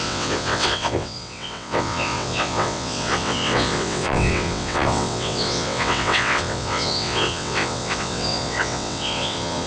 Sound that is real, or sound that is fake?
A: fake